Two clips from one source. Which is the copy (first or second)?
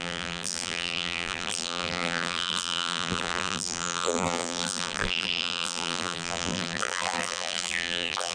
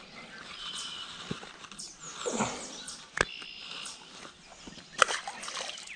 first